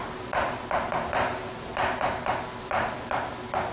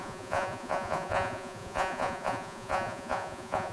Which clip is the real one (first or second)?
first